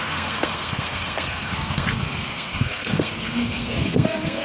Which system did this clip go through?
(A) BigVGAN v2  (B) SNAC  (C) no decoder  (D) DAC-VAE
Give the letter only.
B